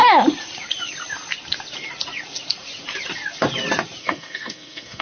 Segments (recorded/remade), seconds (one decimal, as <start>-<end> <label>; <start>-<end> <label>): 0.0-4.0 recorded; 4.0-5.0 remade